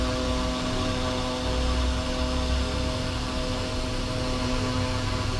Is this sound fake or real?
fake